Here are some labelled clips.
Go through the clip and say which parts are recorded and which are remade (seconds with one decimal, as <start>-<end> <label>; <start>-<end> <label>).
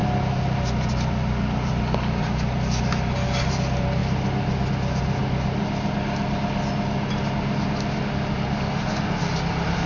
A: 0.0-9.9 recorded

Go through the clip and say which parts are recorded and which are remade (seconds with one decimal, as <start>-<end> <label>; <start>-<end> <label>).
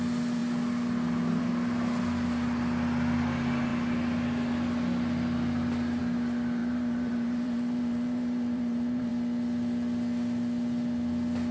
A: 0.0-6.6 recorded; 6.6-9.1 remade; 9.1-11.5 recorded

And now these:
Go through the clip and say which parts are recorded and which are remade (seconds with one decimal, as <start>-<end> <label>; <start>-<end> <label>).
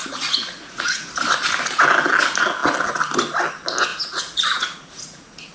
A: 0.0-1.1 remade; 1.1-3.9 recorded; 3.9-5.5 remade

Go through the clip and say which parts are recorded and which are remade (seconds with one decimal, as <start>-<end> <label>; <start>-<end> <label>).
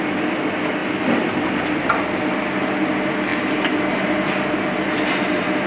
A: 0.0-5.7 recorded